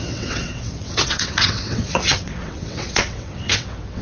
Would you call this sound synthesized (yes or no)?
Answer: yes